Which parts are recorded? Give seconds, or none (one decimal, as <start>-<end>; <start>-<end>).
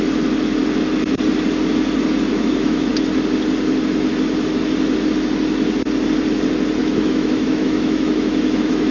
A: 0.0-2.3; 2.9-6.8